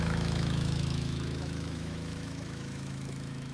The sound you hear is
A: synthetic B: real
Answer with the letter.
A